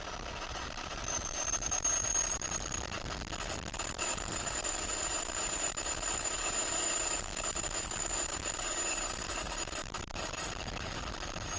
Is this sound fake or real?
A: fake